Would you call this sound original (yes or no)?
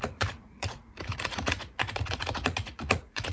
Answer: no